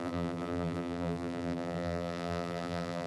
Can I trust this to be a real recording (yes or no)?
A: no